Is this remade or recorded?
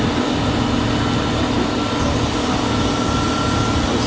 recorded